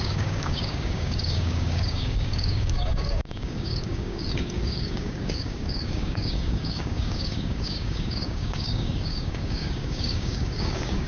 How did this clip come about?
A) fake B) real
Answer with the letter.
A